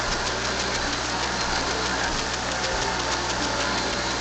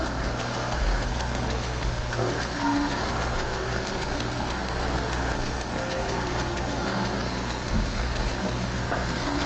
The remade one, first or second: second